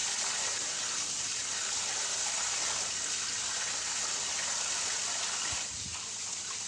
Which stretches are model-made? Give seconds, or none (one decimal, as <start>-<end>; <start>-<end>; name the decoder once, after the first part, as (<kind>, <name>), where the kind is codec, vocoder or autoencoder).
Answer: 0.0-1.4 (vocoder, BigVGAN v2); 5.0-6.7